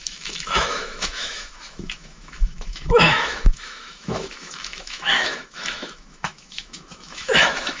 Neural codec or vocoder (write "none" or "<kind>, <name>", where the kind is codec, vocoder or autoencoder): autoencoder, DAC-VAE